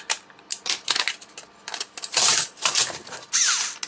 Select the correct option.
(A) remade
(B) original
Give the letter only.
B